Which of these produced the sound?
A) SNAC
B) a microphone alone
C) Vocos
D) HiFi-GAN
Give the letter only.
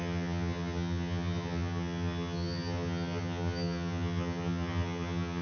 D